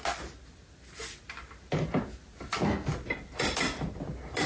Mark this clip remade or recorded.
recorded